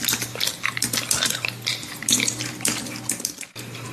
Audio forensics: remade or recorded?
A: recorded